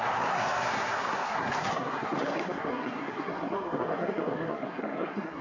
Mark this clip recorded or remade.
remade